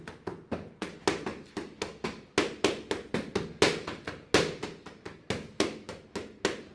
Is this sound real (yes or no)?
yes